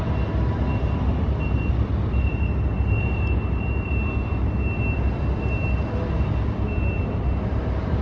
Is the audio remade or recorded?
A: recorded